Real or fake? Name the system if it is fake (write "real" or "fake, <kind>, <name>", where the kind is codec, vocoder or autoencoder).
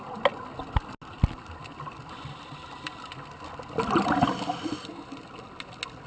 real